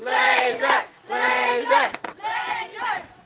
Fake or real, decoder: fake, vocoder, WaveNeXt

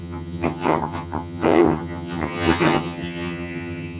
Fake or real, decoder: fake, vocoder, HiFi-GAN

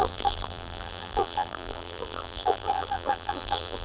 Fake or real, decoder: fake, vocoder, BigVGAN v2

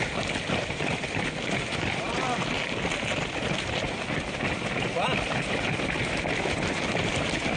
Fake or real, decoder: real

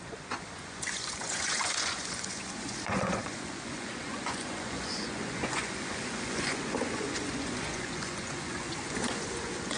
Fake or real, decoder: fake, vocoder, Vocos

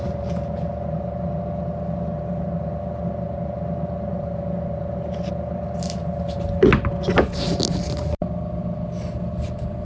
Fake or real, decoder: real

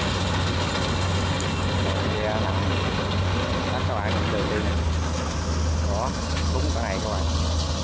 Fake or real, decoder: real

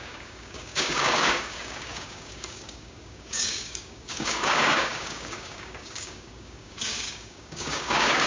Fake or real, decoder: fake, codec, DAC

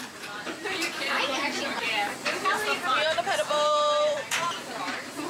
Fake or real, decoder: fake, vocoder, BigVGAN v2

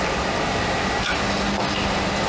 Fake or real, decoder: real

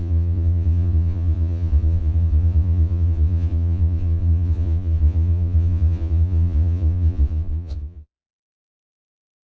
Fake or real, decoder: fake, vocoder, Vocos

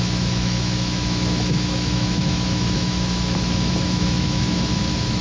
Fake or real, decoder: fake, autoencoder, DAC-VAE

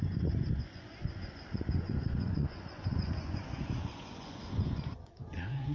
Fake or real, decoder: fake, vocoder, Vocos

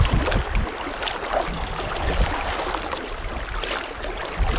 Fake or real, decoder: real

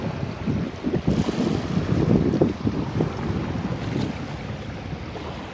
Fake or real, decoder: real